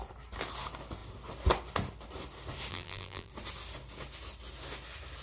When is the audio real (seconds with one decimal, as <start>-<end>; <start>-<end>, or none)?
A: 0.0-2.7; 3.3-5.2